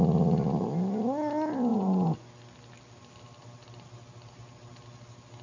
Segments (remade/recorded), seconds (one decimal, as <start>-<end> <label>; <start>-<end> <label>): 0.0-1.7 recorded; 1.7-2.3 remade; 2.3-5.4 recorded